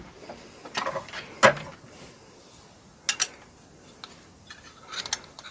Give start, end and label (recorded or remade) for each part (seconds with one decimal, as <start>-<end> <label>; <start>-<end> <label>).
0.0-0.6 recorded; 0.6-1.4 remade; 1.4-5.5 recorded